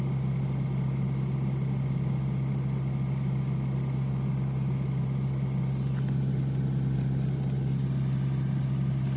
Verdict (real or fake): real